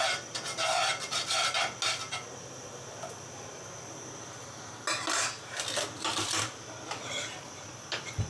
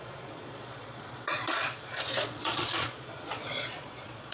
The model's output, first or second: second